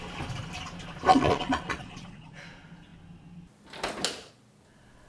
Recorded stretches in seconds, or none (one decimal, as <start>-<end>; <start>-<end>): 0.0-1.1; 2.4-5.1